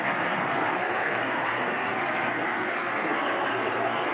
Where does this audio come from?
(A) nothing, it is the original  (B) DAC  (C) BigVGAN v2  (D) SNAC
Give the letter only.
D